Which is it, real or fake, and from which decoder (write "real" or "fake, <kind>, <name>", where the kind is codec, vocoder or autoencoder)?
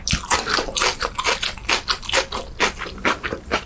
real